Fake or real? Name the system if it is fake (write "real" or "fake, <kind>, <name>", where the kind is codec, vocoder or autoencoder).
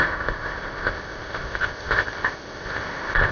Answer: fake, codec, ZipCodec